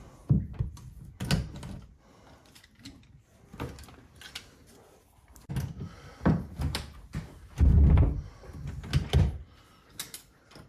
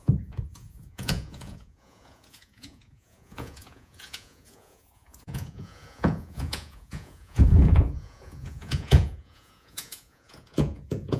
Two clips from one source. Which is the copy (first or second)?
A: second